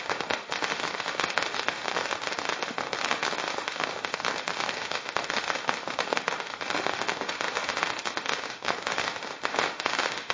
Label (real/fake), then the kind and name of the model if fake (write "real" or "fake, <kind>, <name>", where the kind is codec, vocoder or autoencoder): fake, autoencoder, DAC-VAE